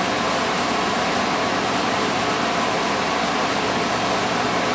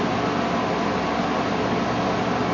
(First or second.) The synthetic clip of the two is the first